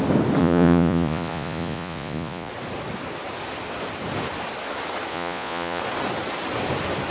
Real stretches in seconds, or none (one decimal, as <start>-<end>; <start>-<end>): 0.0-0.4; 2.5-5.1; 5.8-7.1